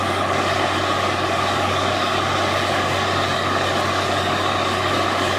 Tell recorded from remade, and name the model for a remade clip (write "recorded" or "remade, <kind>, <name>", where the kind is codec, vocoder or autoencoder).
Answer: remade, codec, DAC